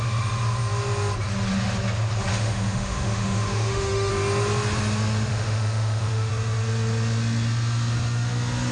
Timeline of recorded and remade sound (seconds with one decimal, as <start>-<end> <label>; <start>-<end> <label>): 0.0-2.3 recorded; 2.3-4.1 remade; 4.1-5.3 recorded; 5.3-6.3 remade; 6.3-8.7 recorded